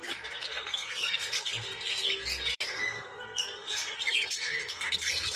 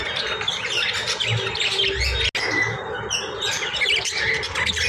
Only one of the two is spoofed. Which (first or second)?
first